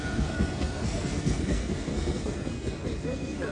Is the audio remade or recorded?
remade